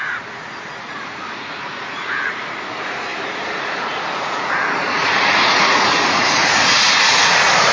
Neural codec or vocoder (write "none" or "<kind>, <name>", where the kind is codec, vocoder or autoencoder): vocoder, Vocos